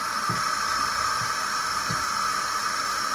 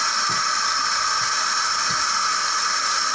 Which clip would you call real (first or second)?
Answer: second